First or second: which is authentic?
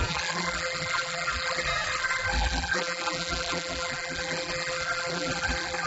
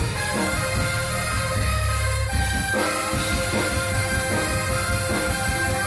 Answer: second